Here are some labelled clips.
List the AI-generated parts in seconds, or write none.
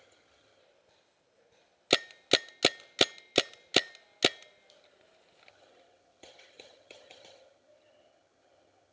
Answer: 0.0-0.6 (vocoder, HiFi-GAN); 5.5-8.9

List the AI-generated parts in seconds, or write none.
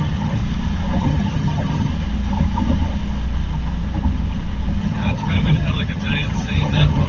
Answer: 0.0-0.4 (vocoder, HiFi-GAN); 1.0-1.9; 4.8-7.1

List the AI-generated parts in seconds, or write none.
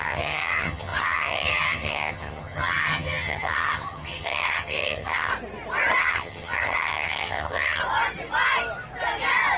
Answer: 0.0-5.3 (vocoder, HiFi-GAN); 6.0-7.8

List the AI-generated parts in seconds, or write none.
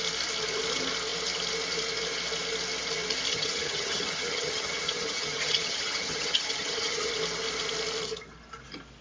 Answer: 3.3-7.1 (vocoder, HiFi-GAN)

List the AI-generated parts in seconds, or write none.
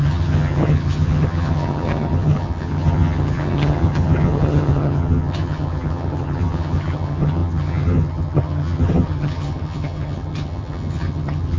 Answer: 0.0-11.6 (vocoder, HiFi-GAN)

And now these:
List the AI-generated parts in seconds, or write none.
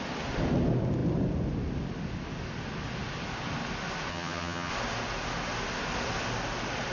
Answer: 4.1-4.7 (vocoder, HiFi-GAN)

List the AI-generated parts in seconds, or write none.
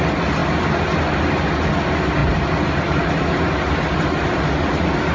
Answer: none